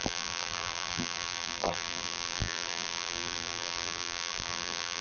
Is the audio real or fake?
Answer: fake